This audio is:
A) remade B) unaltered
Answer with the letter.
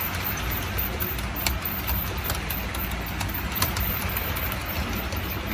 A